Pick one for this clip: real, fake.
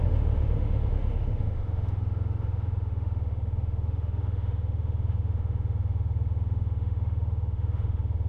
fake